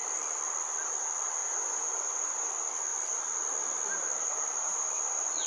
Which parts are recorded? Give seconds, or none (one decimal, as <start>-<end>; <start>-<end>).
0.0-1.4; 2.5-5.5